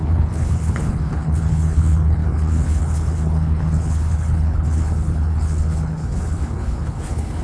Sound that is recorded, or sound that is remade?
remade